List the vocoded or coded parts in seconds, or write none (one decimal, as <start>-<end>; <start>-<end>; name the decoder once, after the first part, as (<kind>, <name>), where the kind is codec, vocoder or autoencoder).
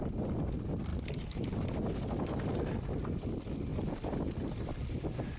none